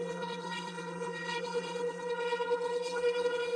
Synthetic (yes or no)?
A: yes